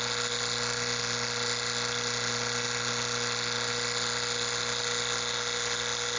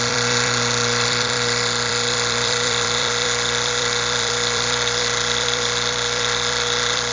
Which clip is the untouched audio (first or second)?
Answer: first